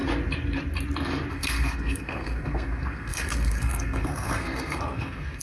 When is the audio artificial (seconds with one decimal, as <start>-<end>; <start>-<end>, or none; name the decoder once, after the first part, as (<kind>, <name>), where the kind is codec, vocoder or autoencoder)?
1.3-5.4 (codec, SNAC)